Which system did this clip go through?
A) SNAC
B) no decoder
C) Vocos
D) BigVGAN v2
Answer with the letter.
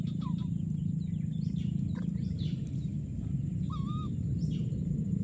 D